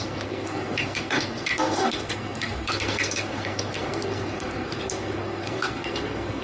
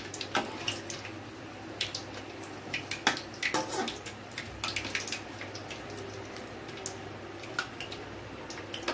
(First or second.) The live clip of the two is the second